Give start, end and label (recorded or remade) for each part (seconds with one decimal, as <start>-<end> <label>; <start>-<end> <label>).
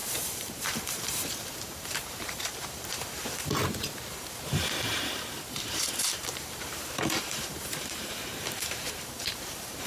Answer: 0.0-3.6 remade; 3.6-4.1 recorded; 4.1-9.9 remade